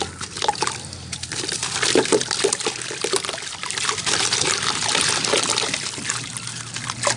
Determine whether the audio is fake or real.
real